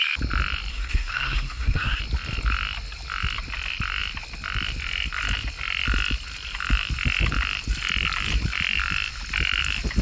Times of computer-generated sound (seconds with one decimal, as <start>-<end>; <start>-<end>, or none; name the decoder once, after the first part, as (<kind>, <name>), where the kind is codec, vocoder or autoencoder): 0.7-2.0 (codec, SNAC)